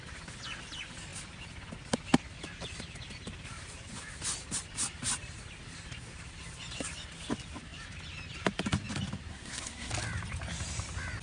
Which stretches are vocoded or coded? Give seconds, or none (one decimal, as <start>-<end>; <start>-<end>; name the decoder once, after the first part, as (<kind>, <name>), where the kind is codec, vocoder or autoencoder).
9.3-9.9 (codec, SNAC)